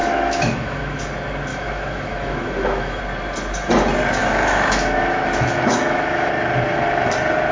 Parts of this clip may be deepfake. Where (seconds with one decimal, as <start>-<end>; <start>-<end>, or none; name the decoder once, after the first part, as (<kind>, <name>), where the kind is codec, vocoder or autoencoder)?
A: 0.0-1.0 (autoencoder, DAC-VAE); 1.5-3.0; 4.2-6.3